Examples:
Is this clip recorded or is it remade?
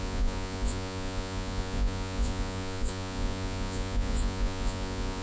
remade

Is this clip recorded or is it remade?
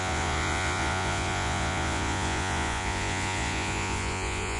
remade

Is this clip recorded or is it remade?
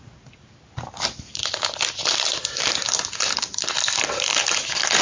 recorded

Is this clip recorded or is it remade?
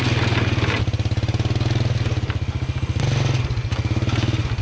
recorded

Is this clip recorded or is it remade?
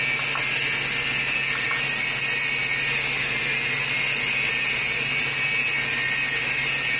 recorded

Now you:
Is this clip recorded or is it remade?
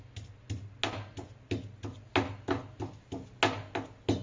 recorded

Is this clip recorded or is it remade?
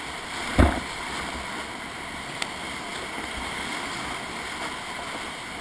recorded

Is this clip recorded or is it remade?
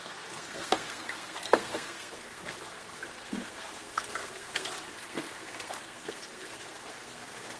remade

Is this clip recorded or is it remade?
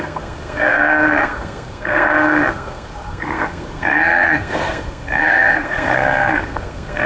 remade